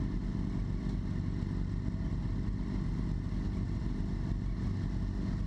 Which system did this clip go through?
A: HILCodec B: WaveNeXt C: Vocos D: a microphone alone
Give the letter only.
D